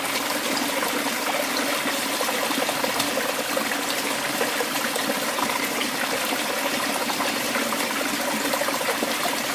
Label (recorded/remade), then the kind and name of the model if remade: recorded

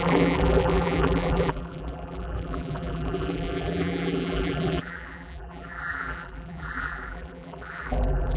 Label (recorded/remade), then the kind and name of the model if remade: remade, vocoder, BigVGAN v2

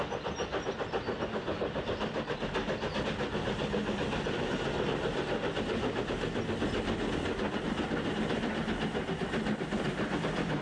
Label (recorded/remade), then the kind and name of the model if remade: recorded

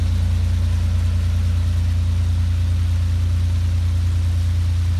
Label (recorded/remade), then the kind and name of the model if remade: recorded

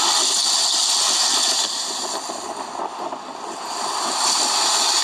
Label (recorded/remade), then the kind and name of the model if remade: recorded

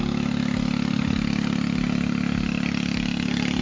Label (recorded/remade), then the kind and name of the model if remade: recorded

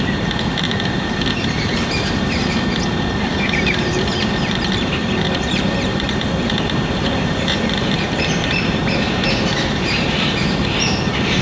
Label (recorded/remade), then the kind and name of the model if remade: remade, vocoder, BigVGAN v2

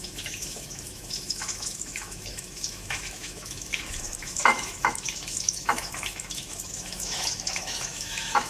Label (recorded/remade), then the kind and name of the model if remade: remade, autoencoder, DAC-VAE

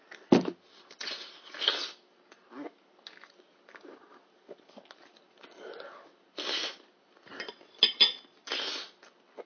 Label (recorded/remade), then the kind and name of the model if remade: recorded